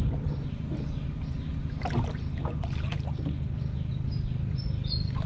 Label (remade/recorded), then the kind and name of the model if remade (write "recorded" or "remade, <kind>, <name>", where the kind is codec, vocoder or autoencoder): recorded